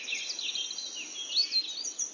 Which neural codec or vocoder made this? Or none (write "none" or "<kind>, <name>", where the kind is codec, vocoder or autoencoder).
none